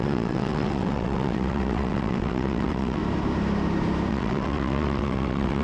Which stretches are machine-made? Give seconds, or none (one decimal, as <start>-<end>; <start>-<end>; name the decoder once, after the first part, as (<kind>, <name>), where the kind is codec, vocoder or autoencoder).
0.0-3.0 (vocoder, WaveNeXt); 4.1-5.6